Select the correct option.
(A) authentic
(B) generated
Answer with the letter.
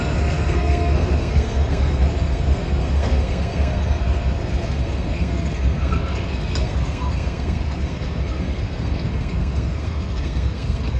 B